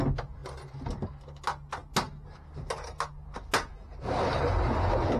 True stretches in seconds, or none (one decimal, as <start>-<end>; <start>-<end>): 0.0-5.2